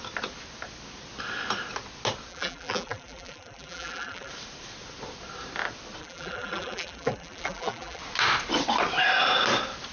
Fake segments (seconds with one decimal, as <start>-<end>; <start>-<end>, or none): 2.3-4.3; 6.0-8.0